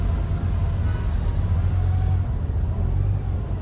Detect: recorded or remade recorded